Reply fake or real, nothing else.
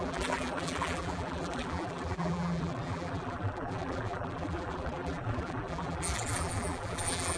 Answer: fake